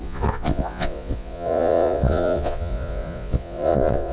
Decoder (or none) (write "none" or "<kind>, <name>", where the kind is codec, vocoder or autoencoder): vocoder, Vocos